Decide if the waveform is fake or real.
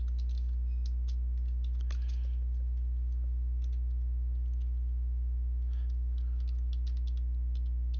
real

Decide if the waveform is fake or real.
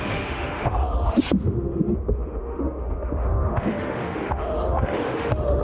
fake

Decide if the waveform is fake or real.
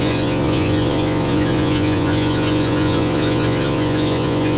fake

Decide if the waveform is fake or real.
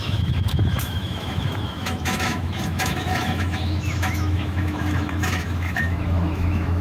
fake